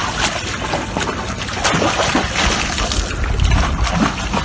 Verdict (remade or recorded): recorded